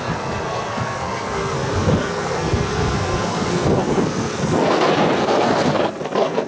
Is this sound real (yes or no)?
no